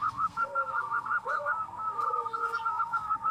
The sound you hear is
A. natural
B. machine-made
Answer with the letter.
B